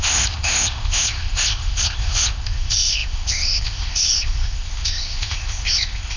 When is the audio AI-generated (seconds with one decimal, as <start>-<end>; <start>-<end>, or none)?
0.0-6.2